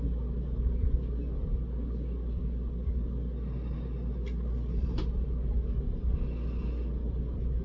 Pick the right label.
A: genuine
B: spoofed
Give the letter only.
A